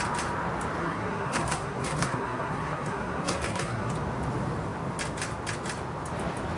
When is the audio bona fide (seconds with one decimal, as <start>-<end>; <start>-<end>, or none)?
0.0-0.8; 3.9-6.6